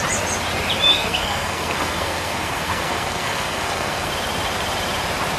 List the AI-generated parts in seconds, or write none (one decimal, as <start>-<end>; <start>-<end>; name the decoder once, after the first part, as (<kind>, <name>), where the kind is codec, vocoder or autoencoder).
0.9-4.1 (codec, SNAC)